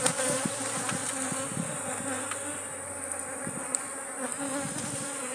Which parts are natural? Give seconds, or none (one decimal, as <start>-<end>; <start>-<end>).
0.0-5.3